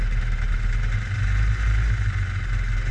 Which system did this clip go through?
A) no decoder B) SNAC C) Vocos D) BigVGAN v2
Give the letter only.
A